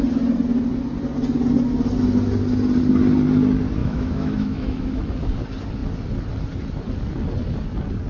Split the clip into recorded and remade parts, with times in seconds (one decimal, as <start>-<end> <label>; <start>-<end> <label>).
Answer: 0.0-3.8 recorded; 3.8-5.0 remade; 5.0-8.1 recorded